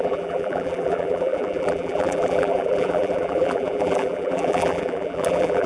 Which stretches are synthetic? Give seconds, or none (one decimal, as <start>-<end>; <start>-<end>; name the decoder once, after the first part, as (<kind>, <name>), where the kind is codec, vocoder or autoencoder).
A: 0.0-5.7 (vocoder, BigVGAN v2)